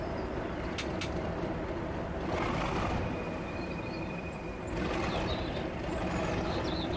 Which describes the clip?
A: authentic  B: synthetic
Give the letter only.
B